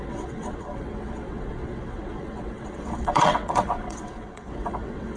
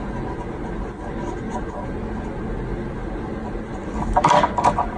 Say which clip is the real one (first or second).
second